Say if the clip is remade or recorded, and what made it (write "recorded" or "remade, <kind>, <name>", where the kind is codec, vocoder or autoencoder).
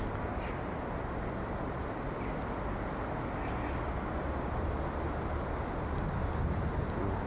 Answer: recorded